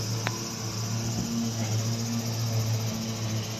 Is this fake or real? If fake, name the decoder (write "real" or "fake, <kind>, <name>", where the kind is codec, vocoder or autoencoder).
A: real